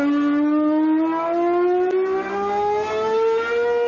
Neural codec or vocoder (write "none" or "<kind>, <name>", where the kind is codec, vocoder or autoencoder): none